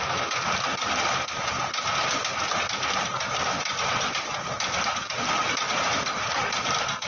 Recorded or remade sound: recorded